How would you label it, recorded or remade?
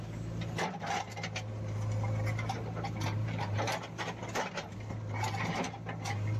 recorded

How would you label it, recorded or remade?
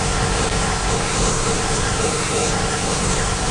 remade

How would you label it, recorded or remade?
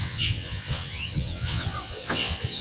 remade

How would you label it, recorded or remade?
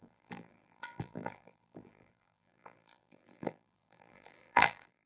remade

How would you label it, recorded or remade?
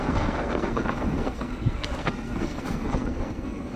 remade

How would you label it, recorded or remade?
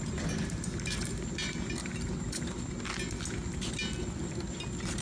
recorded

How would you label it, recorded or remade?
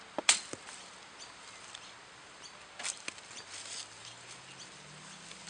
recorded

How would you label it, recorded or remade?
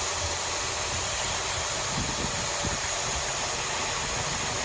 recorded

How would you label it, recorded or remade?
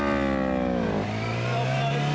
recorded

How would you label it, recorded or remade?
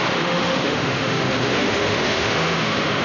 remade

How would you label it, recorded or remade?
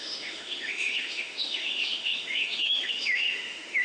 remade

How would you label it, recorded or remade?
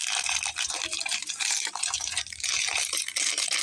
remade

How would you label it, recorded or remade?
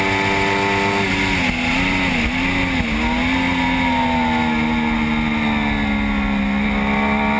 recorded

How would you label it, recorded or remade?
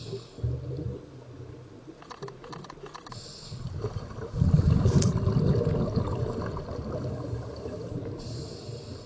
recorded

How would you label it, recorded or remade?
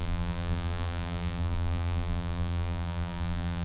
remade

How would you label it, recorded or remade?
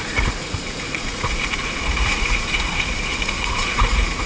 remade